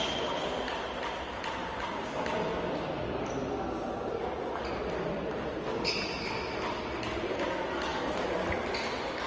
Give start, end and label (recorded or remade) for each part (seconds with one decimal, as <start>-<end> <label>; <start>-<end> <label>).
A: 0.0-9.3 recorded